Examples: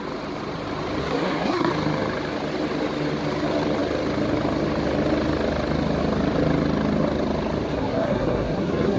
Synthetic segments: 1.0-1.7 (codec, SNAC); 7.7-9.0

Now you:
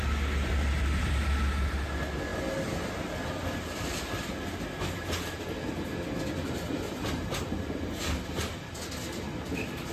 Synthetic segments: none

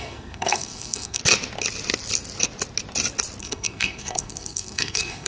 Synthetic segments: 0.0-1.2 (codec, SNAC); 3.4-5.3

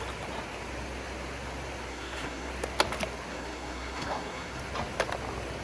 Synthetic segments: 1.9-2.5 (codec, SNAC); 3.3-4.6